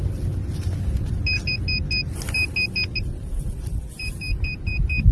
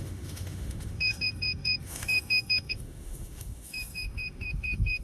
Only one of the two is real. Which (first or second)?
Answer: first